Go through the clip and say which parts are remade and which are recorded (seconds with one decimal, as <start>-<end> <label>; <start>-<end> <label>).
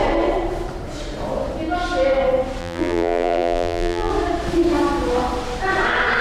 0.0-2.6 recorded; 2.6-4.1 remade; 4.1-6.2 recorded